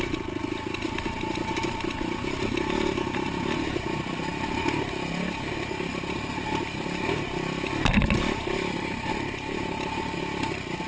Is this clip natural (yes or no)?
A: yes